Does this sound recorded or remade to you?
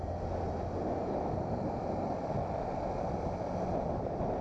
recorded